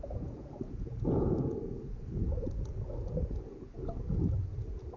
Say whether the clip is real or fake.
fake